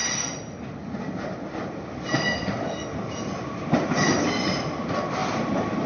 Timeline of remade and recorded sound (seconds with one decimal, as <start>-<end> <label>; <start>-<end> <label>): 0.0-5.9 recorded